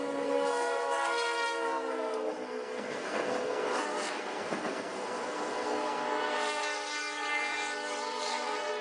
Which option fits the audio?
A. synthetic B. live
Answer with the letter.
A